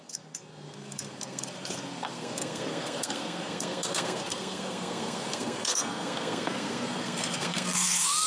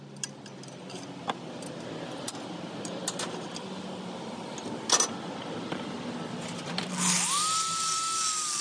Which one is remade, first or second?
first